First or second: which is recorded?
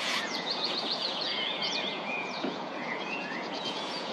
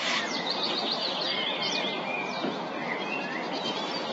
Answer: second